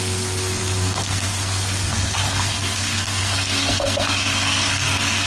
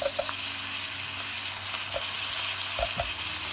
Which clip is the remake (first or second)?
first